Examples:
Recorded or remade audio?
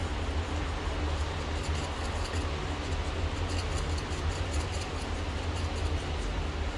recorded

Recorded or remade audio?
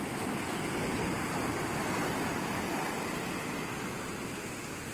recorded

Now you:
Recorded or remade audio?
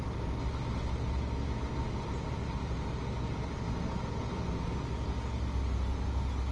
recorded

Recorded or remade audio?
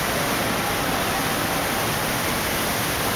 recorded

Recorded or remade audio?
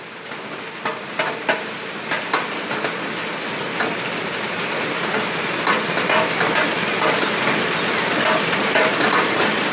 recorded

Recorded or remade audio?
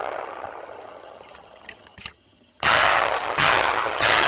remade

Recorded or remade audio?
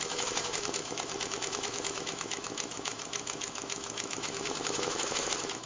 remade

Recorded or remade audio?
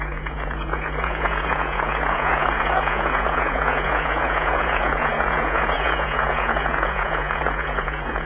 remade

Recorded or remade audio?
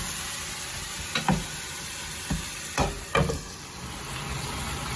recorded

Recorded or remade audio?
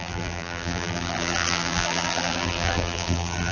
remade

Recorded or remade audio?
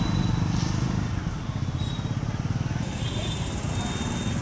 recorded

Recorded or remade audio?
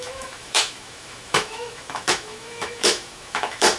remade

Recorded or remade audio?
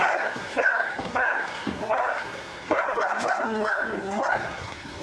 remade